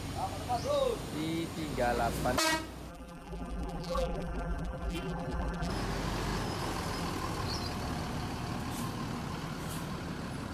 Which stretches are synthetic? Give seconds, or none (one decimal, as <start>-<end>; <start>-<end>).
2.9-5.7